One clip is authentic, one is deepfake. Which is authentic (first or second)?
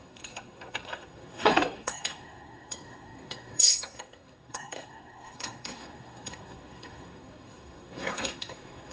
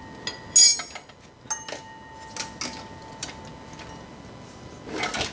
second